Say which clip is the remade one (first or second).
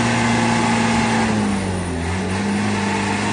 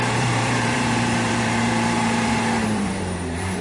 second